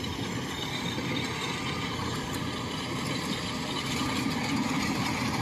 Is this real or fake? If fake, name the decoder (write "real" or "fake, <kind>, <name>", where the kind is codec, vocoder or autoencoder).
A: real